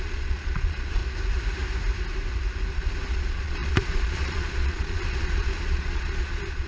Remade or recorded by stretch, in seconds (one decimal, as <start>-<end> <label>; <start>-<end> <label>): 0.0-1.0 remade; 1.0-2.7 recorded; 2.7-6.7 remade